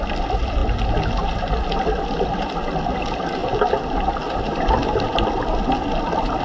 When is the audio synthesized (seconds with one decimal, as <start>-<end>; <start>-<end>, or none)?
none